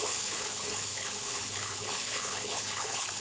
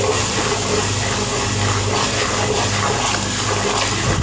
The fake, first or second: first